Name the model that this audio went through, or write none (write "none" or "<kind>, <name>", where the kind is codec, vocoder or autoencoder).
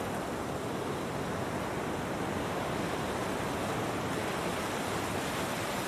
none